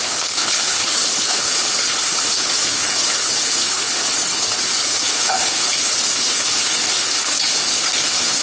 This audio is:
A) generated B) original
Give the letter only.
A